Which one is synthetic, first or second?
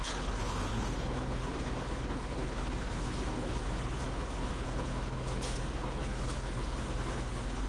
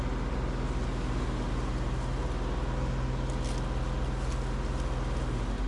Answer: first